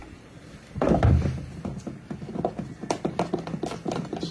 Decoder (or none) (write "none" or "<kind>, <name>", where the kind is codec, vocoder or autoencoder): none